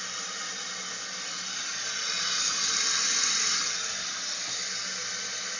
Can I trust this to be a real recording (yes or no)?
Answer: yes